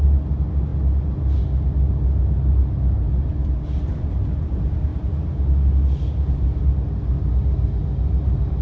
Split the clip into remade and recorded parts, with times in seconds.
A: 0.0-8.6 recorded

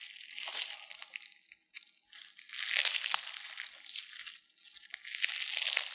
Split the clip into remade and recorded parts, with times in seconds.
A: 0.0-5.9 recorded

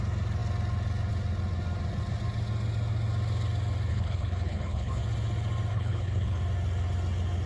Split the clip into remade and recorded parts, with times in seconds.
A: 0.0-3.9 recorded; 3.9-5.0 remade; 5.0-5.7 recorded; 5.7-6.4 remade; 6.4-7.5 recorded

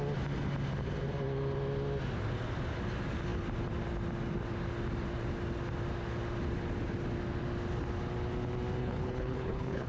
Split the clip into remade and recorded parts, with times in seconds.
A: 0.0-8.8 recorded; 8.8-9.9 remade